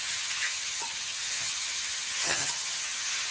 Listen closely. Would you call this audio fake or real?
fake